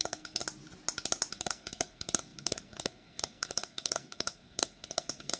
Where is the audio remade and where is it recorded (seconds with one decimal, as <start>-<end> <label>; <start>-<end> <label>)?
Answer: 0.0-0.4 remade; 0.4-1.3 recorded; 1.3-5.4 remade